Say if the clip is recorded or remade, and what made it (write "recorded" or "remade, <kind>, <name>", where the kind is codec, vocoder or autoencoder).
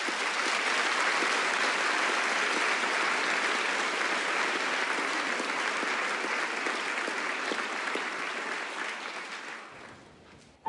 recorded